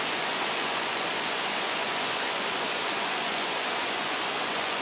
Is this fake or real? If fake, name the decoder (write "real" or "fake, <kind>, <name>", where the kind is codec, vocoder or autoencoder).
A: fake, vocoder, Vocos